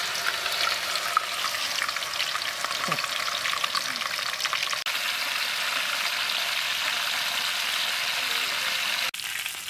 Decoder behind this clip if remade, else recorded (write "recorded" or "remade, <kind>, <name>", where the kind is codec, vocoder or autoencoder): recorded